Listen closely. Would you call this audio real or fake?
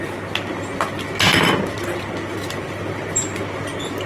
real